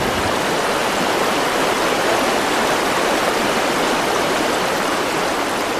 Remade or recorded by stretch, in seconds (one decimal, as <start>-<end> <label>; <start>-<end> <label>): 0.0-5.8 recorded